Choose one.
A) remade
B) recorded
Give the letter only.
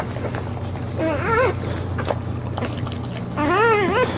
B